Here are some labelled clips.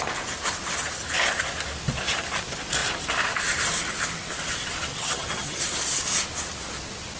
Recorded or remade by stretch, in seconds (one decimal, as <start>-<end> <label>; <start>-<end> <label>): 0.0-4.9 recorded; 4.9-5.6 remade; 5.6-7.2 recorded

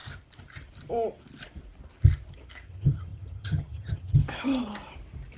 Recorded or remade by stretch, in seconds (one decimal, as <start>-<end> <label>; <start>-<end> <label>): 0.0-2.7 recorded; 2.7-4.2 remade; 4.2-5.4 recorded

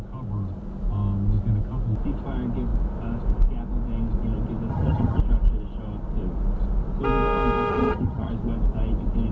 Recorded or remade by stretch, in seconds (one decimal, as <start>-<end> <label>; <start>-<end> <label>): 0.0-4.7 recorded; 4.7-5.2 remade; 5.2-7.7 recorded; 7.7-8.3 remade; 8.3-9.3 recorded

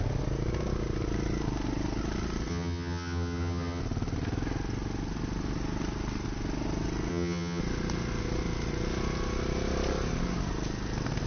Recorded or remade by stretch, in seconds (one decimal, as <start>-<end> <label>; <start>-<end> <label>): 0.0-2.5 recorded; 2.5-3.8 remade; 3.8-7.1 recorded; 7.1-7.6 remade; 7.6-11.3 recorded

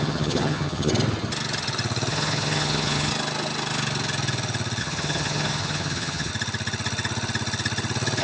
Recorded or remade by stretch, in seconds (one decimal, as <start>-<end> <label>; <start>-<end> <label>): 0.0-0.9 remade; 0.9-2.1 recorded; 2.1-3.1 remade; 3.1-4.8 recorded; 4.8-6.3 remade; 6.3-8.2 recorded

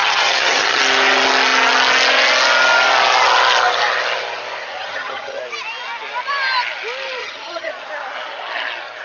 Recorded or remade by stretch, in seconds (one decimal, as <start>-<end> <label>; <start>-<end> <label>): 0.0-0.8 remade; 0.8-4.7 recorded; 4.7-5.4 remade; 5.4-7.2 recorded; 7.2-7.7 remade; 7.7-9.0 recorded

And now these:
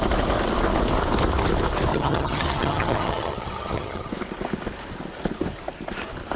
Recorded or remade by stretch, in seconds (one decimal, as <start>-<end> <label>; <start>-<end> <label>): 0.0-1.9 recorded; 1.9-4.1 remade; 4.1-6.4 recorded